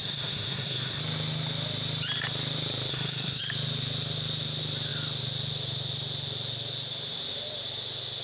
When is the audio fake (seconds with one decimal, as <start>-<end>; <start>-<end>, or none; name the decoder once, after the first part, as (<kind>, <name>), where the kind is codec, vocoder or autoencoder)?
0.0-1.0 (codec, SNAC); 2.9-3.4